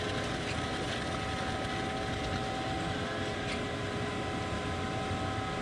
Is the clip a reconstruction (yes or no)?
no